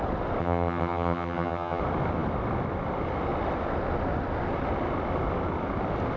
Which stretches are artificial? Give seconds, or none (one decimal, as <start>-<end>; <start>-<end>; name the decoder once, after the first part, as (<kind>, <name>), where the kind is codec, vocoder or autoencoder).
0.4-1.8 (vocoder, HiFi-GAN)